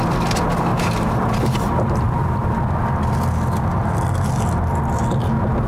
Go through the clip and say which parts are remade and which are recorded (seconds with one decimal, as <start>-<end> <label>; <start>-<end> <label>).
0.0-0.7 recorded; 0.7-2.5 remade; 2.5-5.7 recorded